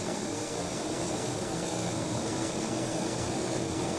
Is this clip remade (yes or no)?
yes